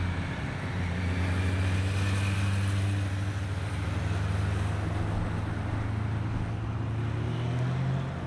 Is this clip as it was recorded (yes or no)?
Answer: yes